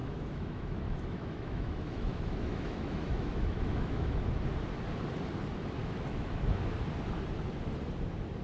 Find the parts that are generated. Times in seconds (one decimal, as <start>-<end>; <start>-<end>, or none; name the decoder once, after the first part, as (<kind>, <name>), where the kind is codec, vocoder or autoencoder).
0.0-4.3 (autoencoder, DAC-VAE); 5.8-6.5